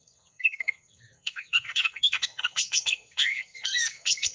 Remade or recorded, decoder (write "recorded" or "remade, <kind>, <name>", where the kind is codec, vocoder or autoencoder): remade, codec, SNAC